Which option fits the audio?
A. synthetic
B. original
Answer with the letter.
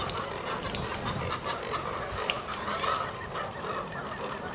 B